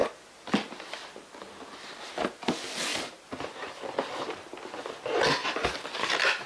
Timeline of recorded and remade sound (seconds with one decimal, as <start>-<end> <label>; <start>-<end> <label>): 0.0-6.5 recorded

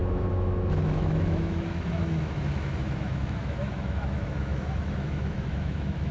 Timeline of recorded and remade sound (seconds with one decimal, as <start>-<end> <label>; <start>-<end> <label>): 0.0-6.1 remade